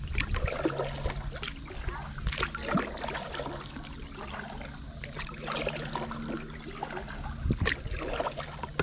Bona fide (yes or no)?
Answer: yes